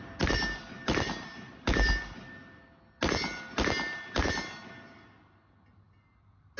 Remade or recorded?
recorded